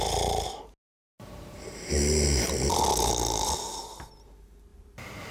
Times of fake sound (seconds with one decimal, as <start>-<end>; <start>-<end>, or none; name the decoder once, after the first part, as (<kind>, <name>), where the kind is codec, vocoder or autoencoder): 4.7-5.3 (vocoder, BigVGAN v2)